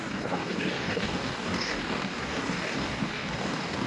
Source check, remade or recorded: remade